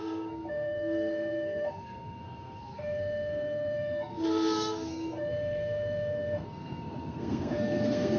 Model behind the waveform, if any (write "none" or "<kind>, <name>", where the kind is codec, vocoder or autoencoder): codec, SNAC